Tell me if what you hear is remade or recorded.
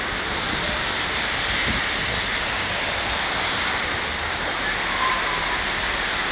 recorded